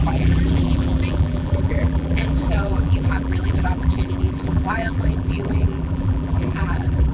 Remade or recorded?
remade